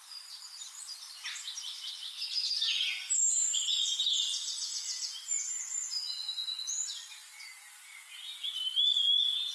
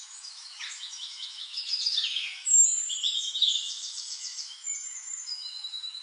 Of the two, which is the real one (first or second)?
first